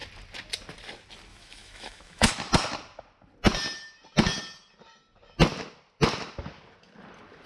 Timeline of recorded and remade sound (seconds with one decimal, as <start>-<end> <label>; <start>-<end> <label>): 0.0-1.3 recorded; 1.3-2.3 remade; 2.3-7.5 recorded